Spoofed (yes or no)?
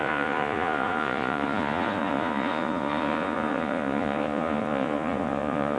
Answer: yes